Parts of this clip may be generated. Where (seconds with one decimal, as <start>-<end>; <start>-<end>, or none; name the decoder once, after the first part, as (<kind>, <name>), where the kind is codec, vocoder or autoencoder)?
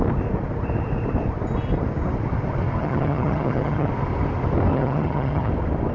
2.8-3.9 (vocoder, HiFi-GAN); 4.7-5.5